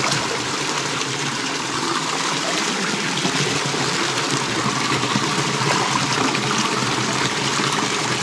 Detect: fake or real real